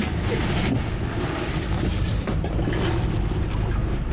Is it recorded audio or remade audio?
recorded